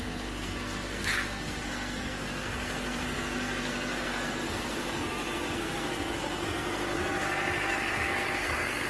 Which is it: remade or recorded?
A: remade